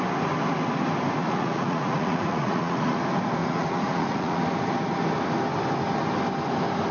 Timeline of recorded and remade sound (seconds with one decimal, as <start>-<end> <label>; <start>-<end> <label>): 0.0-1.2 recorded; 1.2-3.0 remade; 3.0-3.4 recorded; 3.4-4.4 remade; 4.4-6.9 recorded